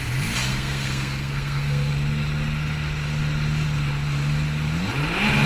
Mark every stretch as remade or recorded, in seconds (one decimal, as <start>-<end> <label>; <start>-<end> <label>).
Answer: 0.0-0.5 recorded; 0.5-1.9 remade; 1.9-5.5 recorded